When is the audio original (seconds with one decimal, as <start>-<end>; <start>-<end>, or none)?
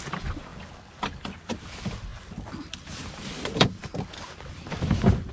0.0-5.3